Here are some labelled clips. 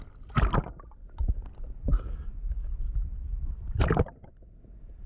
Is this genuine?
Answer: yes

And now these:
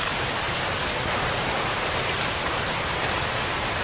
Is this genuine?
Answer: no